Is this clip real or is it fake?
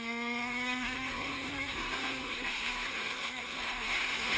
fake